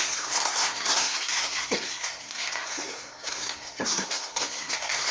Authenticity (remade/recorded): remade